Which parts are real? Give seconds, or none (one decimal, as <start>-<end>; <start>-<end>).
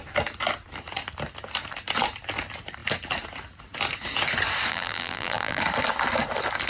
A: 0.0-4.7; 5.6-6.7